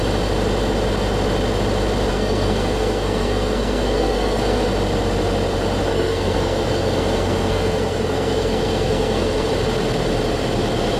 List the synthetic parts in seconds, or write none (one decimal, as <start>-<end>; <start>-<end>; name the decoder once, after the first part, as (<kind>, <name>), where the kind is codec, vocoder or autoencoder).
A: 2.1-4.7 (codec, SNAC); 5.9-9.5